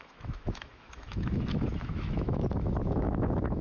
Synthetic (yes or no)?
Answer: yes